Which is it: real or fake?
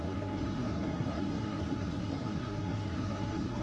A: fake